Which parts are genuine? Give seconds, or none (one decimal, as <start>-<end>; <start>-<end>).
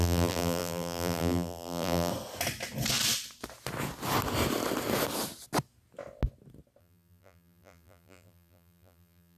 2.1-6.8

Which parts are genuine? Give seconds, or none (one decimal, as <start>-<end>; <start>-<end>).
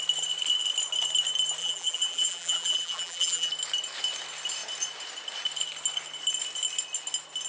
0.0-1.6; 3.5-7.5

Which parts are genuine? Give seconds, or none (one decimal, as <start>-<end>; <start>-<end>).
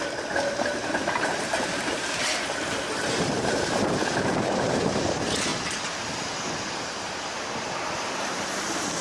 5.5-6.7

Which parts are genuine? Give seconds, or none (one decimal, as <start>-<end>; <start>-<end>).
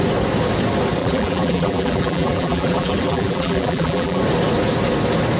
0.0-1.0; 4.2-5.4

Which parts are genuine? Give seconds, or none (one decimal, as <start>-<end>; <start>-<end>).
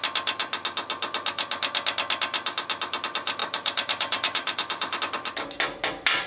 0.0-3.4; 5.0-6.3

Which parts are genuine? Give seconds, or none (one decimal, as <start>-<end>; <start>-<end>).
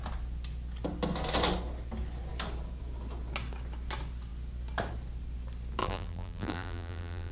0.0-5.8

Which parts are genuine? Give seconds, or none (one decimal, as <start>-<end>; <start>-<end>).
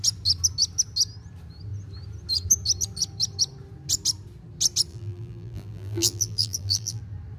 0.0-4.9; 7.0-7.4